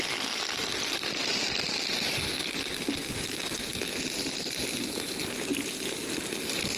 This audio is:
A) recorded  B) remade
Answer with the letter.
A